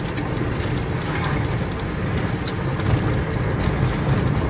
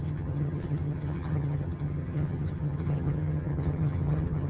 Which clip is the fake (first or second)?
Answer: second